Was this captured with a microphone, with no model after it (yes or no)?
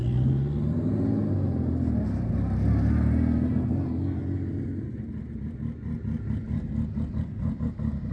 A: yes